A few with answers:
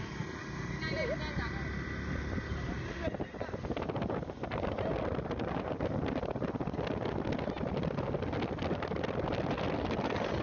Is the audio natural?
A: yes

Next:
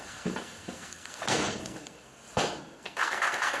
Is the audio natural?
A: no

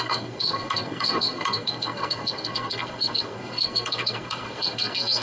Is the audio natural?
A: no